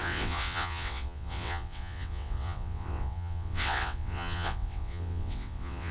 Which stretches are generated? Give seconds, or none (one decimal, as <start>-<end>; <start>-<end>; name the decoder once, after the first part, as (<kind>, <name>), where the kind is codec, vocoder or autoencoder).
0.0-5.9 (vocoder, WaveNeXt)